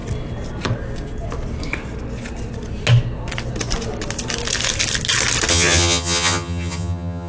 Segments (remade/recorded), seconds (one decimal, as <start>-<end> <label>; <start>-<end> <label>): 0.0-5.5 recorded; 5.5-7.3 remade